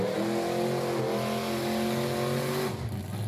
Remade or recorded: recorded